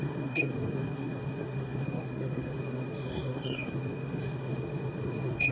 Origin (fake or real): fake